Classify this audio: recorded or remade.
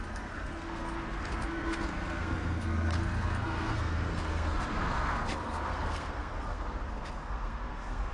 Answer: remade